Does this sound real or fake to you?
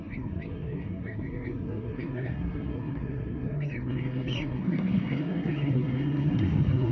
fake